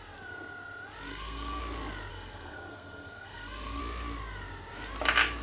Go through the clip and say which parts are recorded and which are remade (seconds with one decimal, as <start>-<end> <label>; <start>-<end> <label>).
0.0-1.1 recorded; 1.1-1.6 remade; 1.6-2.1 recorded; 2.1-3.8 remade; 3.8-5.4 recorded

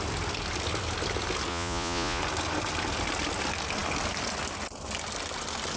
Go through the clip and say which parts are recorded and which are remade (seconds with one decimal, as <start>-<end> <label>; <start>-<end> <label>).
0.0-1.5 recorded; 1.5-2.2 remade; 2.2-5.8 recorded

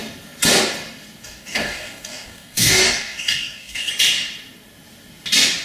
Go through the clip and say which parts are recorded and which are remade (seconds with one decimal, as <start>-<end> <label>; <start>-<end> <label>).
0.0-1.2 recorded; 1.2-3.9 remade; 3.9-5.6 recorded

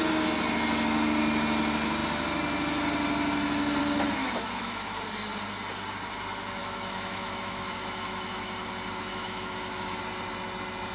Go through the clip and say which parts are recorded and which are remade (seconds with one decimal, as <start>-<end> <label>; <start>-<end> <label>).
0.0-4.2 recorded; 4.2-5.0 remade; 5.0-6.6 recorded; 6.6-8.7 remade; 8.7-9.1 recorded; 9.1-10.0 remade; 10.0-10.9 recorded

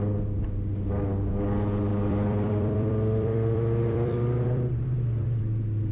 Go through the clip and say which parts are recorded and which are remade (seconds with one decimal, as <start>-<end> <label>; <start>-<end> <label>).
0.0-1.9 recorded; 1.9-5.4 remade; 5.4-5.9 recorded

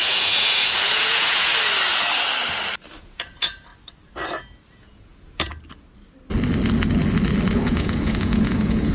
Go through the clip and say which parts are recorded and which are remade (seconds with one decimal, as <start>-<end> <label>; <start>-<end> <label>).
0.0-1.5 remade; 1.5-3.0 recorded; 3.0-3.7 remade; 3.7-4.6 recorded; 4.6-5.5 remade; 5.5-7.5 recorded; 7.5-8.9 remade

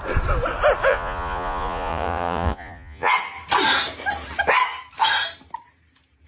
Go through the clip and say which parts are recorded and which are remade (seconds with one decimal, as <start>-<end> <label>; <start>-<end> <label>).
0.0-0.9 recorded; 0.9-3.1 remade; 3.1-6.3 recorded

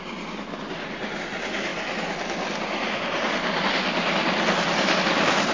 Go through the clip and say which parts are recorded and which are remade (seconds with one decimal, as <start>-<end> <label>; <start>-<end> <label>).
0.0-5.5 recorded